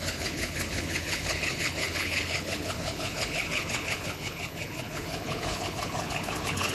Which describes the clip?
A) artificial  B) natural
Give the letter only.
A